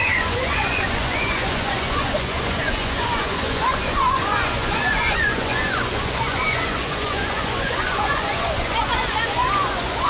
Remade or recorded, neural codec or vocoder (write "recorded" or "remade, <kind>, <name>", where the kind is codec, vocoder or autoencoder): remade, vocoder, Vocos